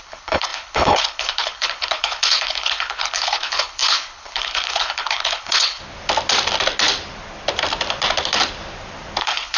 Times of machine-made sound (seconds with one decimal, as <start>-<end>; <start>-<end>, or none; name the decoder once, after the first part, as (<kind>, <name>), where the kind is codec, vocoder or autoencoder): 0.0-5.8 (codec, HILCodec); 9.2-9.6